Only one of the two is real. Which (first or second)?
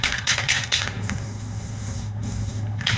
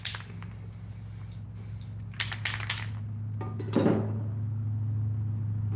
second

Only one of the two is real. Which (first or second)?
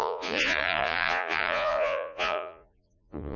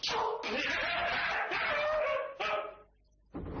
second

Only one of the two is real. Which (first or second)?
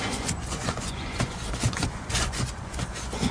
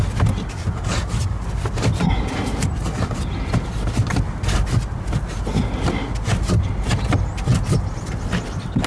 second